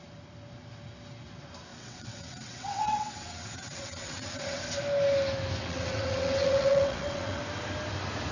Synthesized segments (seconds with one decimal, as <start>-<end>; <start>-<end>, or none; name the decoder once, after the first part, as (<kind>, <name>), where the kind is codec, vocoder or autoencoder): 1.7-4.6 (vocoder, WaveNeXt); 5.6-7.4